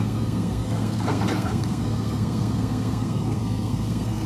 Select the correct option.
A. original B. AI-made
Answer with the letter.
B